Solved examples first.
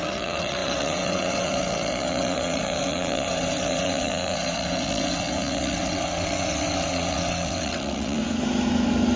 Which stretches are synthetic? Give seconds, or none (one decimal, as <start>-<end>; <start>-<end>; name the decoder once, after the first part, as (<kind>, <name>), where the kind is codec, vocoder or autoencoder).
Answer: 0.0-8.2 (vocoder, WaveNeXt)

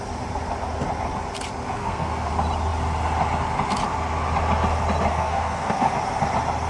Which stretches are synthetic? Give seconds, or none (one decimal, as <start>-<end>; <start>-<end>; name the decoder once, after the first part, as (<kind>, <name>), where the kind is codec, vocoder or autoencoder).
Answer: 1.8-2.3 (codec, SNAC); 5.1-5.9

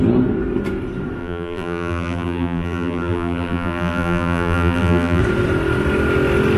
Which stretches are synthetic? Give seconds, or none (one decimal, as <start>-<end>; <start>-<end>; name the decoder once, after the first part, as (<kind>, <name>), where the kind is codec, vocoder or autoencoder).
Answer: 1.2-5.2 (vocoder, BigVGAN v2)

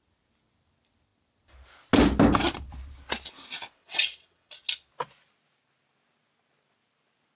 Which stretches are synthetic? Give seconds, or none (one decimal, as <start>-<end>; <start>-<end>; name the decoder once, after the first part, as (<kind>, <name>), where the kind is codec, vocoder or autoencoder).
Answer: 3.8-4.6 (vocoder, WaveNeXt)

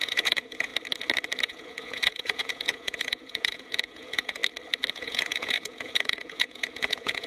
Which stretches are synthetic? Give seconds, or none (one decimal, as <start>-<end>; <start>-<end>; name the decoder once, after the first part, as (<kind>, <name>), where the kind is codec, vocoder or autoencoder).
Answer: 0.0-0.7 (vocoder, Vocos); 1.4-4.4; 4.9-7.3